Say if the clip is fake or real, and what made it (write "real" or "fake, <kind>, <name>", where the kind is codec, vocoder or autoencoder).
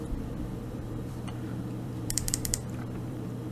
fake, vocoder, BigVGAN v2